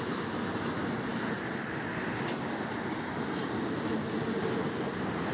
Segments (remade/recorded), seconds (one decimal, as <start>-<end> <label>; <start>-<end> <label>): 0.0-5.3 recorded